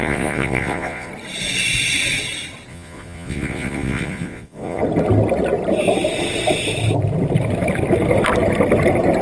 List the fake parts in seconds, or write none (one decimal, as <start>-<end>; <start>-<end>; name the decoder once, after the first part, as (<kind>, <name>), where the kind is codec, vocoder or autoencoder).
0.0-1.1 (vocoder, Vocos); 2.7-4.8